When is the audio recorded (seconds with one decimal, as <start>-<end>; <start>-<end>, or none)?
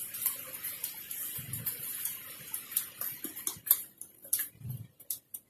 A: 0.0-0.8; 2.6-5.5